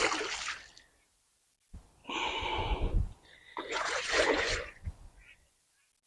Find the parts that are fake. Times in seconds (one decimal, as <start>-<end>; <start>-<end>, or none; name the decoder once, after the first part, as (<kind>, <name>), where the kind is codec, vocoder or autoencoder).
2.0-5.6 (vocoder, Vocos)